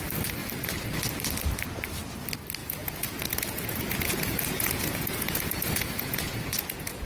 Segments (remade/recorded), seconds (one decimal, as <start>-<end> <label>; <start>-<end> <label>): 0.0-2.6 recorded; 2.6-7.1 remade